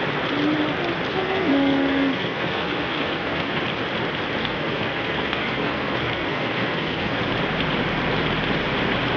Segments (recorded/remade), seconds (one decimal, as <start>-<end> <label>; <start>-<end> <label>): 0.0-1.1 recorded; 1.1-3.6 remade; 3.6-4.4 recorded; 4.4-7.2 remade; 7.2-9.2 recorded